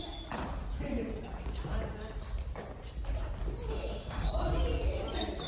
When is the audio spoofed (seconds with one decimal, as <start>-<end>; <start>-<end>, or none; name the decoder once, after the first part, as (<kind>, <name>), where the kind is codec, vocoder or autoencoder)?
3.7-4.3 (autoencoder, DAC-VAE)